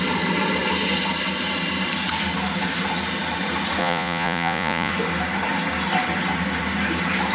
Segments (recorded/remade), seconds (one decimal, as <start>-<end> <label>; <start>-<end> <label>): 0.0-3.8 recorded; 3.8-4.9 remade; 4.9-7.3 recorded